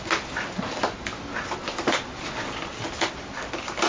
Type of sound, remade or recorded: recorded